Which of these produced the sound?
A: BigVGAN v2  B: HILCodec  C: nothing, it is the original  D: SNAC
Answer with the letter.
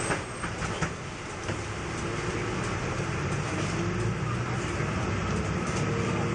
C